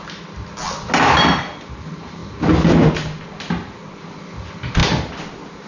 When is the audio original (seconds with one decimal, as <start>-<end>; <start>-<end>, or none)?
0.0-5.7